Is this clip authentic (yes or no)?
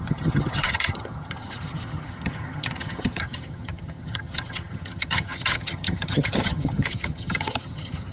no